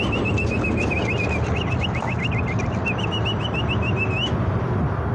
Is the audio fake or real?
real